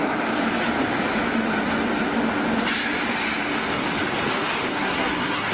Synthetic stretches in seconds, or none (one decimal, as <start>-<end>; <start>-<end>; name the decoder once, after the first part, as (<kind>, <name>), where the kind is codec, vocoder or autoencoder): 4.7-5.5 (codec, SNAC)